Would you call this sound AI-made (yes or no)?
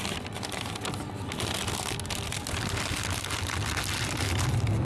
no